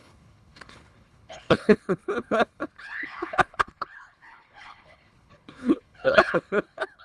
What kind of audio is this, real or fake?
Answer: fake